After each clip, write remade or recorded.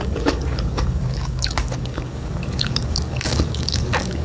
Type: remade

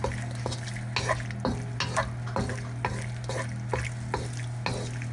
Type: recorded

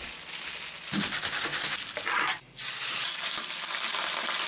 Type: recorded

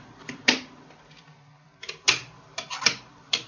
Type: remade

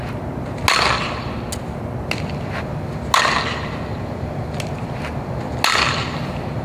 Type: recorded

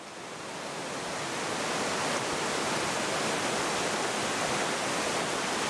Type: recorded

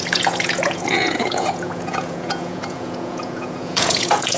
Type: remade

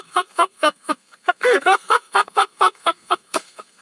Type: remade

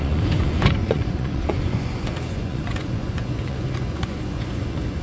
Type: remade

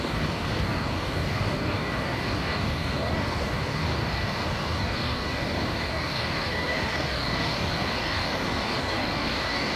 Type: remade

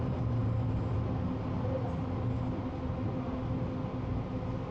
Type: recorded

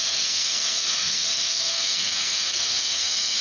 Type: remade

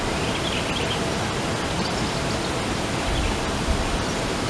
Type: recorded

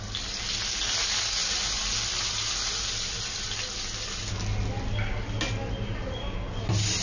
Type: recorded